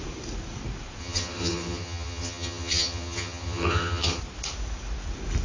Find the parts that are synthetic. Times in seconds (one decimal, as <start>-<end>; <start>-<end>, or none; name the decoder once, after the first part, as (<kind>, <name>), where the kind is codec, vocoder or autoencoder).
1.0-4.2 (vocoder, HiFi-GAN)